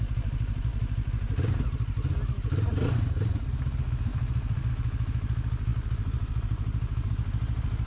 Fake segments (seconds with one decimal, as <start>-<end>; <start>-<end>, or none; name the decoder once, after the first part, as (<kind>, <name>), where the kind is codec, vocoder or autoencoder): 4.1-4.7 (vocoder, BigVGAN v2)